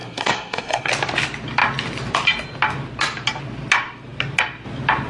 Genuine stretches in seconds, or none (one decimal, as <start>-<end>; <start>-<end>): 0.9-5.1

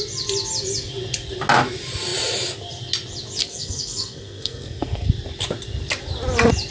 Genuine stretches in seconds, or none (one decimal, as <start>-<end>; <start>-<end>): 0.0-3.4; 5.1-6.7

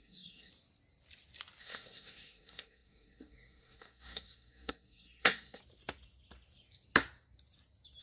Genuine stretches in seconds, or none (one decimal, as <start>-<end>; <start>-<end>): 0.5-1.6; 5.6-8.0

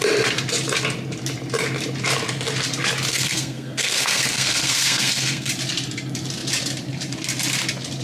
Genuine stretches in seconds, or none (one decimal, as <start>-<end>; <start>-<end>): 0.0-3.1; 5.5-8.0

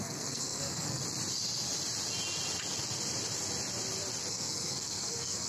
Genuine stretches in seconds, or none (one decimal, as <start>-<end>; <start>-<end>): 1.0-4.3

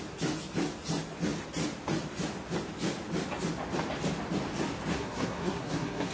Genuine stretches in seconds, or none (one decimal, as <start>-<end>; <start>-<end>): 0.0-4.9